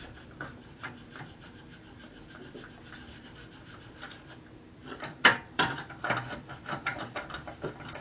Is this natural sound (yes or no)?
no